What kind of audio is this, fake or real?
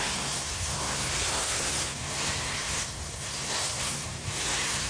fake